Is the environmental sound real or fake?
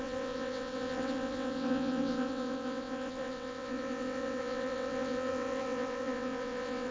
fake